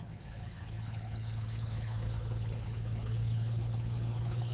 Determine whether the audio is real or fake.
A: fake